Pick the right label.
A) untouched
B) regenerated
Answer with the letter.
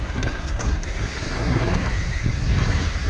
B